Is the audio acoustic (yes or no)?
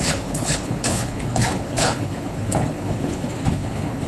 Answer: no